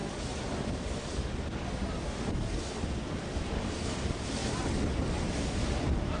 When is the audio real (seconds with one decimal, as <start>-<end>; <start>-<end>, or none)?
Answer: 0.0-3.2; 4.4-5.4